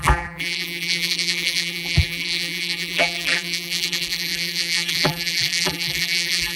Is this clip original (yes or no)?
no